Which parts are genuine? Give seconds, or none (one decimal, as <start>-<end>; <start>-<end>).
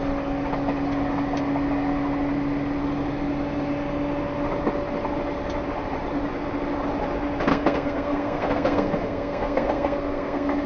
0.0-7.5